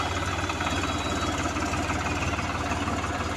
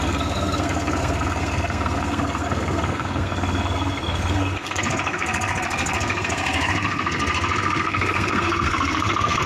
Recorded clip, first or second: first